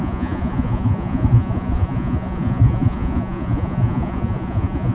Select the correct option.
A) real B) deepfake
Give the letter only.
B